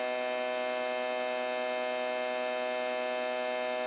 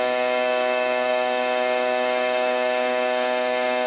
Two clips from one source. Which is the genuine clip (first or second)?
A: first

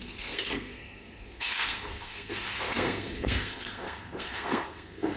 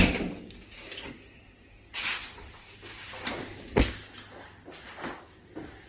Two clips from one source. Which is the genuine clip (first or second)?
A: second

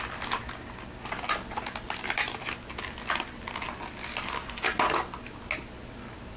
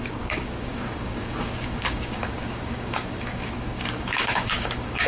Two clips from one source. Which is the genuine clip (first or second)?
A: first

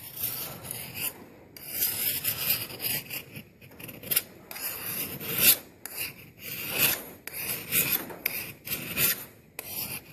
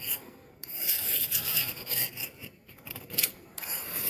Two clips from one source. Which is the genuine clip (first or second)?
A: first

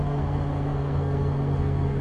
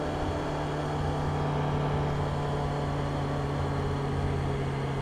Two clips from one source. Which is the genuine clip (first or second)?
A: second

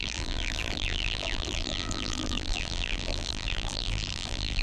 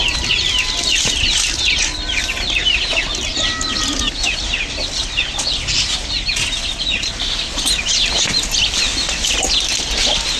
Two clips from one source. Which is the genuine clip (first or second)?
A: second